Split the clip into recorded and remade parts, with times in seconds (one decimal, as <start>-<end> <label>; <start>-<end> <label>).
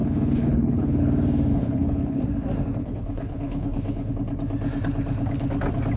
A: 0.0-1.0 remade; 1.0-1.5 recorded; 1.5-2.2 remade; 2.2-2.8 recorded; 2.8-4.1 remade; 4.1-6.0 recorded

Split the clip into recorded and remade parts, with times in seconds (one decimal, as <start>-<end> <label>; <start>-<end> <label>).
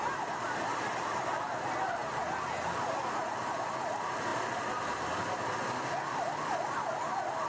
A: 0.0-7.5 recorded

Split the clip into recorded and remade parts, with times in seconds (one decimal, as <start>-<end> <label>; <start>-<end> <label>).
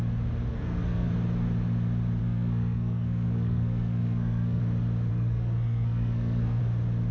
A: 0.0-0.5 recorded; 0.5-1.1 remade; 1.1-2.2 recorded; 2.2-4.6 remade; 4.6-5.1 recorded; 5.1-6.6 remade; 6.6-7.1 recorded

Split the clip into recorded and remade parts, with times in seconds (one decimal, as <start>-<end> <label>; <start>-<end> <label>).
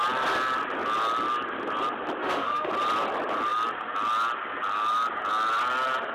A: 0.0-2.2 recorded; 2.2-2.7 remade; 2.7-6.1 recorded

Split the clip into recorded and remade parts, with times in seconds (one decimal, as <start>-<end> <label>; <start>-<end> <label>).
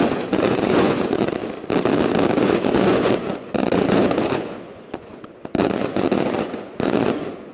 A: 0.0-1.4 remade; 1.4-2.4 recorded; 2.4-7.5 remade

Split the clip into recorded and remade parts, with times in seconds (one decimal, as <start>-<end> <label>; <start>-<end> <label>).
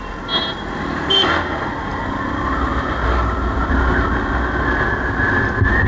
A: 0.0-5.9 recorded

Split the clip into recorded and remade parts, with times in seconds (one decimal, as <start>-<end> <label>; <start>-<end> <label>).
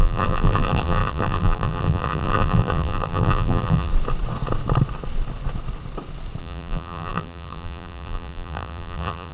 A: 0.0-3.9 remade; 3.9-6.4 recorded; 6.4-9.3 remade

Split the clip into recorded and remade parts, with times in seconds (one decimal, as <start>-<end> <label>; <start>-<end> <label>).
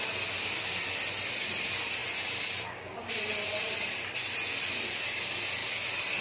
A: 0.0-6.2 recorded